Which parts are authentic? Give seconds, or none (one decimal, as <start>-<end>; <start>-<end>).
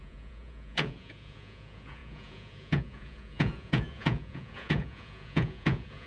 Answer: none